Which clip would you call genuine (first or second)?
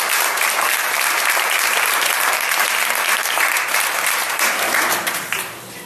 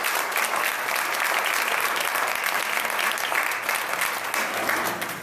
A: second